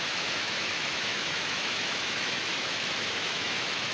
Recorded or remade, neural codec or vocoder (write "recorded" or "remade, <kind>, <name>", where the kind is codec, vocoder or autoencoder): remade, autoencoder, DAC-VAE